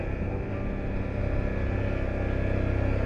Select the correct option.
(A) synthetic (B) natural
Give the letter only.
B